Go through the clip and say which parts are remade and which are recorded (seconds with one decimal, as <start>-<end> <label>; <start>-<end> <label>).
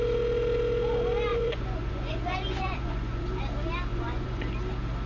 0.0-1.3 recorded; 1.3-3.2 remade; 3.2-3.9 recorded; 3.9-4.5 remade; 4.5-5.1 recorded